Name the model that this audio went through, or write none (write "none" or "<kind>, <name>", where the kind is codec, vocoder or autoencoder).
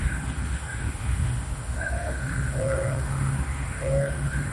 autoencoder, DAC-VAE